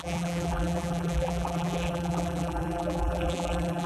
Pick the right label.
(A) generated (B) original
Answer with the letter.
A